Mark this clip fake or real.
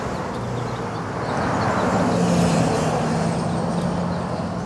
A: real